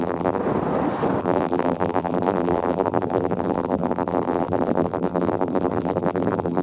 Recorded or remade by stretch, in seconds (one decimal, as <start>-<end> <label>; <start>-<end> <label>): 0.0-0.4 remade; 0.4-1.2 recorded; 1.2-6.6 remade